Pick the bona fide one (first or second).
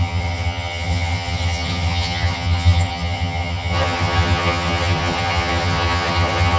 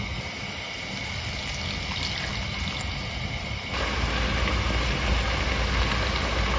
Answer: second